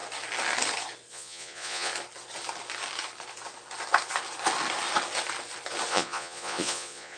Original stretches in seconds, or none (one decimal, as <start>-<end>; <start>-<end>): 0.0-1.1; 1.9-5.9